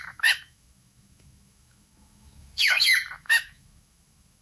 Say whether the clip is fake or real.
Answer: fake